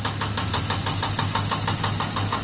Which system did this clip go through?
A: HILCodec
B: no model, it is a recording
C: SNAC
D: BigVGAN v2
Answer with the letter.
B